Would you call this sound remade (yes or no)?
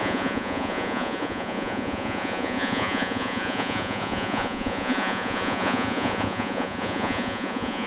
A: yes